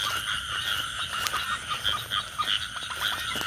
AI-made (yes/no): no